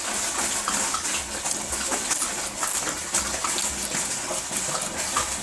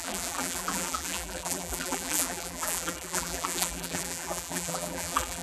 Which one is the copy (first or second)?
second